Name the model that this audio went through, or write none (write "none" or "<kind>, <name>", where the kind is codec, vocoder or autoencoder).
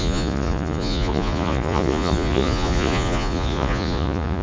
vocoder, Vocos